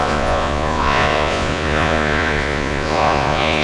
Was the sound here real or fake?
fake